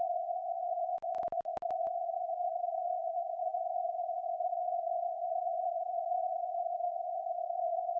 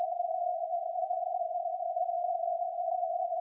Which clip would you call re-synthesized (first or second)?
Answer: second